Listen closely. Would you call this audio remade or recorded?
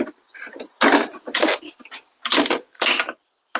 recorded